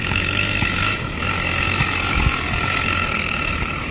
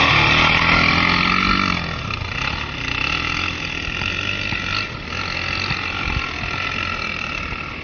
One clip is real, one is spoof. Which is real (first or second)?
second